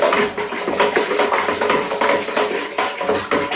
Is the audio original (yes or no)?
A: no